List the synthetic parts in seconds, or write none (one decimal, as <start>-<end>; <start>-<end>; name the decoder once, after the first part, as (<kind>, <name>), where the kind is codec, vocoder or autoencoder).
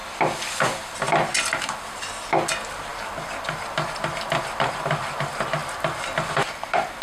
2.5-5.6 (vocoder, BigVGAN v2); 6.3-7.0